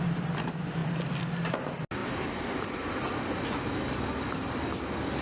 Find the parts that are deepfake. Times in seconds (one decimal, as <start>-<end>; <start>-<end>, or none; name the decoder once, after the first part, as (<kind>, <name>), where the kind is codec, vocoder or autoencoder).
none